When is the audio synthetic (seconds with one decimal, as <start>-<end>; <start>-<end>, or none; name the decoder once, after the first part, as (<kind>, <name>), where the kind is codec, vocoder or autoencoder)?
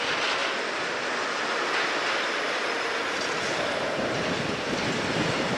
none